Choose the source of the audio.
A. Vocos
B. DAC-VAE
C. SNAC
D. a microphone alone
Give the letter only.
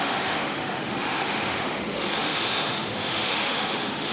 B